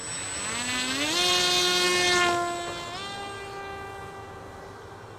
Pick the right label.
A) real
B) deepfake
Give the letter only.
A